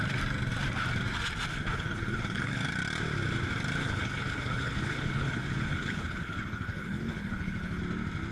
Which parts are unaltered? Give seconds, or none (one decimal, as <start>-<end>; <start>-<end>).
0.0-1.7; 2.6-3.8; 7.8-8.3